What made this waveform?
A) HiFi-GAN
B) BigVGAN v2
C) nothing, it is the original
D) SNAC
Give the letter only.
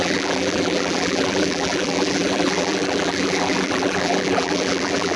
B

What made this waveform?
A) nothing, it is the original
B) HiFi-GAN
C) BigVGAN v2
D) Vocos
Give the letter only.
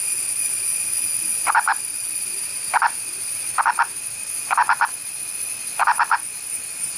C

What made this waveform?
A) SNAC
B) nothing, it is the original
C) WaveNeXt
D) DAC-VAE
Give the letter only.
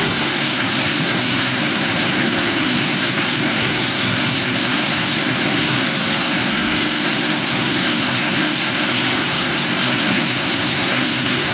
A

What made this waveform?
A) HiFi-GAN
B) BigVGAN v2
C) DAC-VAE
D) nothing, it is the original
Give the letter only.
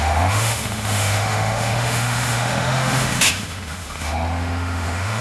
C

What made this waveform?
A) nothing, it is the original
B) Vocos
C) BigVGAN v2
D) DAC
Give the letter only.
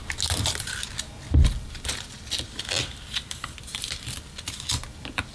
A